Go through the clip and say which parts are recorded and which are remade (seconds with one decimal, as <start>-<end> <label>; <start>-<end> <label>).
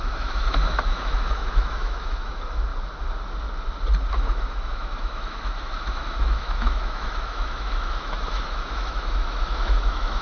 0.0-2.7 remade; 2.7-4.1 recorded; 4.1-10.2 remade